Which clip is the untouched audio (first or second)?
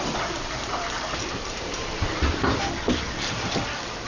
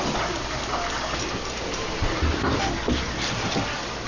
second